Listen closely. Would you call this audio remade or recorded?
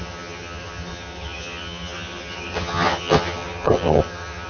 remade